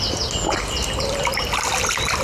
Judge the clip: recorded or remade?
recorded